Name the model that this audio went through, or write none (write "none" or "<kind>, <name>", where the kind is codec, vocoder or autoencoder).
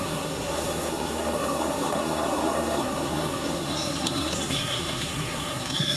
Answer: codec, SNAC